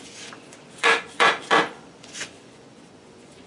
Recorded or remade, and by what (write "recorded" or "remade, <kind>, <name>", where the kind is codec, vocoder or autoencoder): remade, vocoder, Vocos